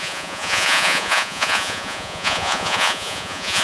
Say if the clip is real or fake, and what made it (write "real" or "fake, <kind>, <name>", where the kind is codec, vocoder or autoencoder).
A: fake, vocoder, Vocos